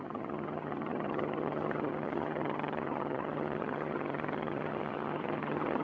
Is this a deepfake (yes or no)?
yes